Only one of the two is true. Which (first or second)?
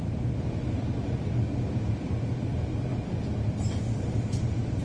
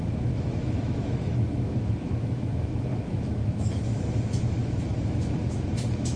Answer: first